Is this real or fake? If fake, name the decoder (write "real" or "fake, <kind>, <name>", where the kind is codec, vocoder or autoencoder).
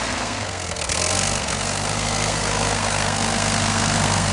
fake, codec, SNAC